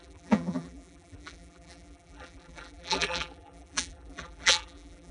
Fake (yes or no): yes